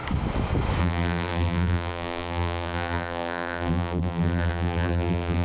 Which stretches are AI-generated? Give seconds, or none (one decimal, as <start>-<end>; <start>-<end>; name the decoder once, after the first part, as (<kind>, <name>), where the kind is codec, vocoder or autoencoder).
0.8-5.4 (vocoder, BigVGAN v2)